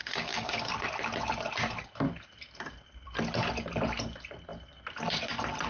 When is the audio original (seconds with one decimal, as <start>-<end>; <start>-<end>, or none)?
0.7-5.7